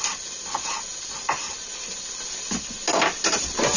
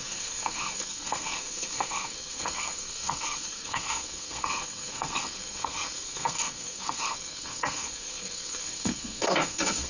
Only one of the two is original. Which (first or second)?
first